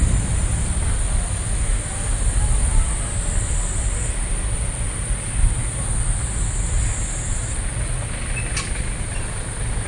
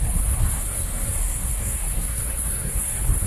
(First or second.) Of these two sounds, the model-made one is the second